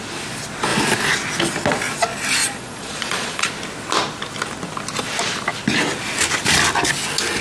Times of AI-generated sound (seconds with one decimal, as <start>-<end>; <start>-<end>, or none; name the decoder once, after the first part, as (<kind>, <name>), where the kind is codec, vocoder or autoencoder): 2.4-3.5 (vocoder, Vocos)